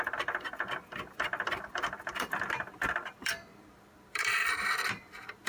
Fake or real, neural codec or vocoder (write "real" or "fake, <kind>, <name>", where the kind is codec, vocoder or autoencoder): fake, vocoder, BigVGAN v2